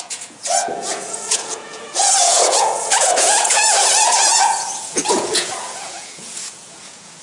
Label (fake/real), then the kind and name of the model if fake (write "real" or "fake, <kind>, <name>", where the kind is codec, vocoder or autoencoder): fake, vocoder, Vocos